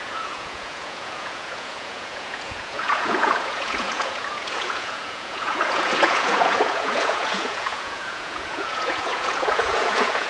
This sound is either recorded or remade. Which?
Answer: remade